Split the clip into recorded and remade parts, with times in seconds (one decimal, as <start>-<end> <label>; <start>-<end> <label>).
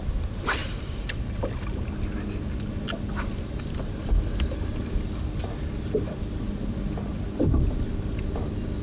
0.0-8.8 recorded